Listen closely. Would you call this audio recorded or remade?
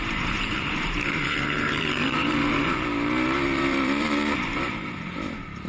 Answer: remade